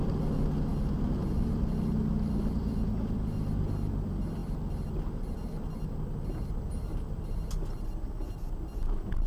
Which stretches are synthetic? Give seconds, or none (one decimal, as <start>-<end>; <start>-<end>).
none